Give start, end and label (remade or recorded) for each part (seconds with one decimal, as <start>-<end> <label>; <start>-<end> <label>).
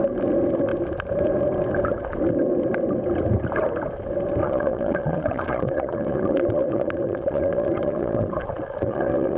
0.0-4.4 recorded; 4.4-9.4 remade